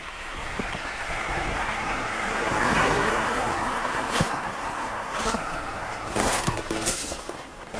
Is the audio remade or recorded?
remade